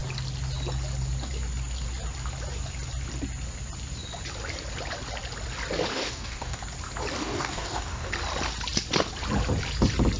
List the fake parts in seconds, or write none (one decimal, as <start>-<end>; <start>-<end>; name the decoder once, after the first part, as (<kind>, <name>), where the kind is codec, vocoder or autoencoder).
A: 5.9-6.6 (codec, DAC); 7.2-8.1